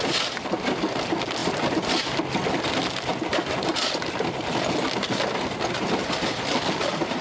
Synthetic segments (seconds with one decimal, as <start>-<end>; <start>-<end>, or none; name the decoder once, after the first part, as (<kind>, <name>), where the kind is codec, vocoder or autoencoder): none

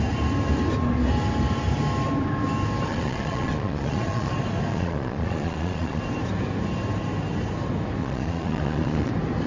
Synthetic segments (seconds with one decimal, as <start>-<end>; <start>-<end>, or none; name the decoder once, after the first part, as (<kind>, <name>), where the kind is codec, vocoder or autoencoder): 2.9-4.3 (vocoder, Vocos); 4.7-6.0; 8.0-9.1

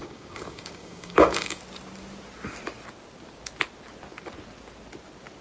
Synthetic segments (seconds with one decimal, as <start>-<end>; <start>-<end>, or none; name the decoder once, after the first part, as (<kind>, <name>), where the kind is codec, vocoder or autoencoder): 0.0-1.6 (codec, DAC)

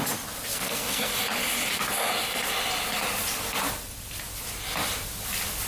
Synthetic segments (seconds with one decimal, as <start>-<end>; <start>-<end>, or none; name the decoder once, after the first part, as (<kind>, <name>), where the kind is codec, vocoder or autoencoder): 0.5-1.1 (codec, SNAC)

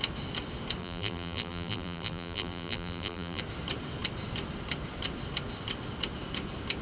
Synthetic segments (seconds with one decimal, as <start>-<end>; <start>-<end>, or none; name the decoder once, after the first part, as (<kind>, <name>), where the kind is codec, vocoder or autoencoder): 0.8-3.4 (vocoder, BigVGAN v2)

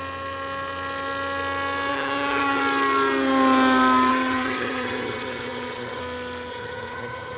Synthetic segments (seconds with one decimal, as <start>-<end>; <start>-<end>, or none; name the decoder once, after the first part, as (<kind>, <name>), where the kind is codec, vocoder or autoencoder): 1.9-2.6 (vocoder, HiFi-GAN); 4.1-6.0; 6.5-7.4